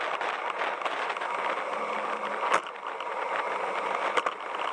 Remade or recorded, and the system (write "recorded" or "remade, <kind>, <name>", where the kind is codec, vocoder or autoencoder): recorded